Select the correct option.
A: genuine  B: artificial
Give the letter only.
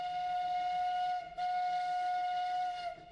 A